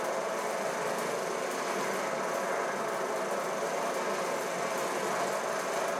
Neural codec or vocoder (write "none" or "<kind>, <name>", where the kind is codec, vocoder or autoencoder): none